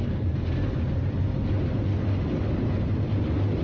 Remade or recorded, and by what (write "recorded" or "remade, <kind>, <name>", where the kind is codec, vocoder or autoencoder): recorded